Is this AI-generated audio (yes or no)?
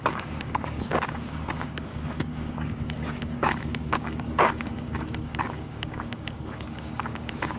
yes